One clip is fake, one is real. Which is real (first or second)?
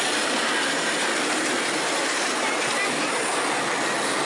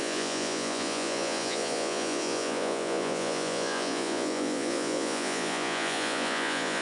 first